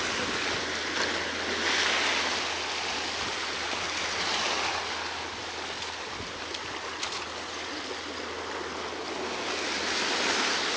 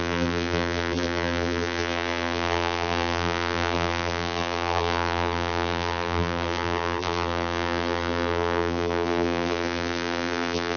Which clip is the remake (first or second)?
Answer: second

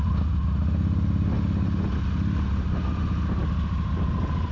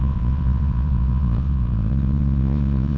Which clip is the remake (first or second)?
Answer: second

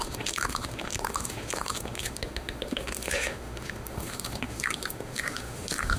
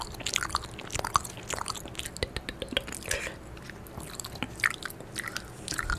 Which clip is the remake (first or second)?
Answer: first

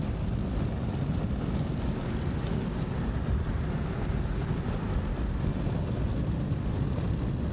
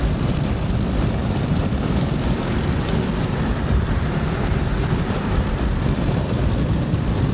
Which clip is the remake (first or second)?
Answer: second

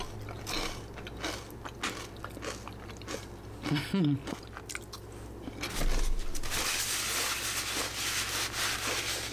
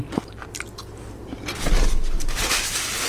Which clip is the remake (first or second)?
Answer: second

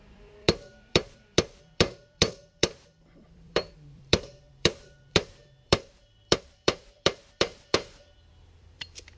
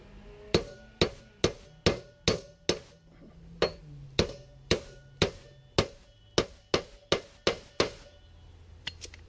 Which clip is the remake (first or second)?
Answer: first